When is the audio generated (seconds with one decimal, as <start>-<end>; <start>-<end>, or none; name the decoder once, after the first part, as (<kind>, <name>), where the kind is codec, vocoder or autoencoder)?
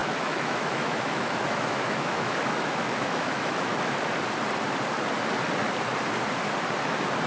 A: 0.0-3.7 (autoencoder, DAC-VAE)